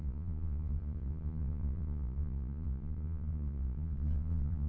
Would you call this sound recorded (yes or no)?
no